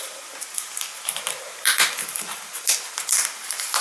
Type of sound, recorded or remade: remade